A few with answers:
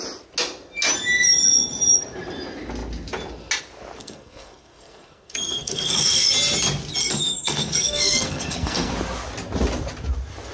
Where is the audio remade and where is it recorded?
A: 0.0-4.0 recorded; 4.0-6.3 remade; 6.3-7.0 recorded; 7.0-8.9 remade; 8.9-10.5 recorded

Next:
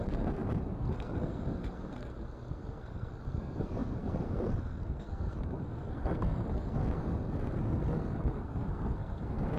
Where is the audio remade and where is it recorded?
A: 0.0-9.6 remade